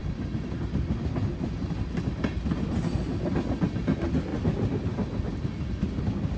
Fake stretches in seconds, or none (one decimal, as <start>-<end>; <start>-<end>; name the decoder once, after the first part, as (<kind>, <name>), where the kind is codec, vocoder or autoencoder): none